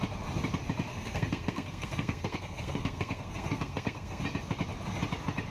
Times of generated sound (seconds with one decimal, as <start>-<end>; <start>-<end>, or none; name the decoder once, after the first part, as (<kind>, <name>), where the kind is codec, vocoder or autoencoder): 0.9-4.2 (codec, SNAC)